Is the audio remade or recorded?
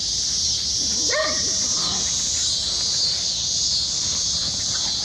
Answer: recorded